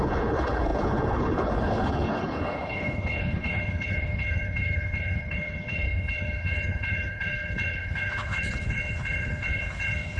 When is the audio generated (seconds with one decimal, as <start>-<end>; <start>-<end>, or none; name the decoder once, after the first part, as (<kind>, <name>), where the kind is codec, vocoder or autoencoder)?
0.0-10.2 (codec, HILCodec)